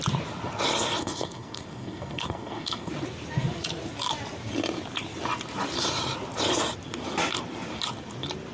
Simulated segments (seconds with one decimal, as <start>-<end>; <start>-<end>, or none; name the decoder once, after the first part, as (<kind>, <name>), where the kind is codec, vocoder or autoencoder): 1.0-2.9 (codec, SNAC)